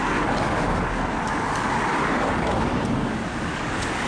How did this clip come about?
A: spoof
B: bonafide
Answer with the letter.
A